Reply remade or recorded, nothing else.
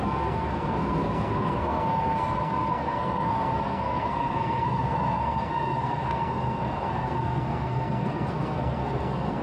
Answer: remade